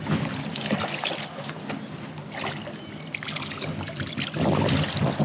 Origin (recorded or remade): recorded